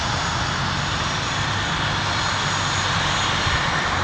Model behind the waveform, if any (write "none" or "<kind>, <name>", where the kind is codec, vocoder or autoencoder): none